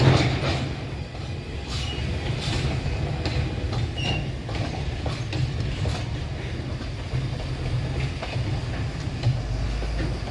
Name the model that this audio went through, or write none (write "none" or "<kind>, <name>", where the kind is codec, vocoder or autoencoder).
none